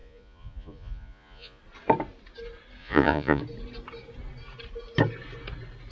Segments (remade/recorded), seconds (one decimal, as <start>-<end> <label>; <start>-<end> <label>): 0.0-1.6 remade; 1.6-2.8 recorded; 2.8-3.4 remade; 3.4-5.9 recorded